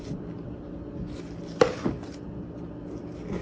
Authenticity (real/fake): real